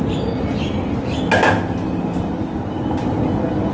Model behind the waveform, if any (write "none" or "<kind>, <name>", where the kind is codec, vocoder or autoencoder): none